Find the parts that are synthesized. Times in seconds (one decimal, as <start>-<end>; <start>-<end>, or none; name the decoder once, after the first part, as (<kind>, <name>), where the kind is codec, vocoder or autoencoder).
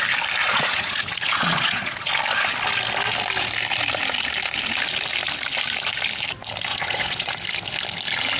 0.4-2.1 (vocoder, Vocos); 6.7-7.3